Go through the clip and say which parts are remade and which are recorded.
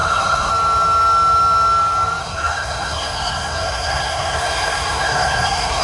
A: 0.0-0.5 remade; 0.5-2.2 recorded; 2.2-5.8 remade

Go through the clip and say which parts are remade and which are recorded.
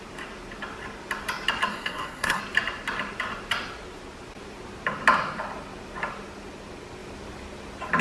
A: 0.0-1.7 recorded; 1.7-2.4 remade; 2.4-8.0 recorded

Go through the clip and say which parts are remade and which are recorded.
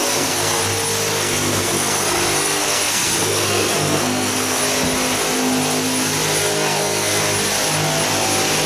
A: 0.0-0.6 remade; 0.6-1.1 recorded; 1.1-4.6 remade; 4.6-6.4 recorded; 6.4-7.2 remade; 7.2-8.7 recorded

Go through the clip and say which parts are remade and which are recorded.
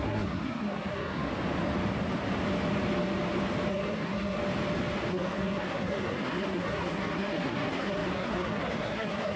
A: 0.0-1.3 remade; 1.3-3.7 recorded; 3.7-4.4 remade; 4.4-5.1 recorded; 5.1-9.4 remade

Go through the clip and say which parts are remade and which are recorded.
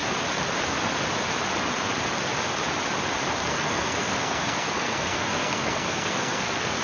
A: 0.0-3.5 recorded; 3.5-6.8 remade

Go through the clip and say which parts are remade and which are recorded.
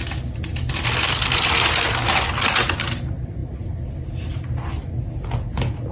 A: 0.0-5.9 recorded